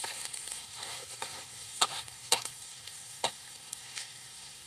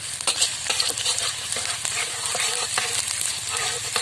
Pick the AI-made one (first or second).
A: first